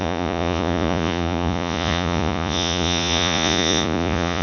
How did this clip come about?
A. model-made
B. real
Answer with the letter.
A